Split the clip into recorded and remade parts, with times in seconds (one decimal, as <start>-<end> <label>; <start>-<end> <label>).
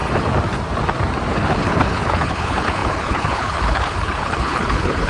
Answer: 0.0-1.3 recorded; 1.3-5.1 remade